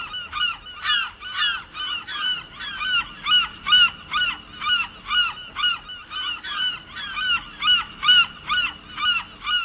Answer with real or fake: real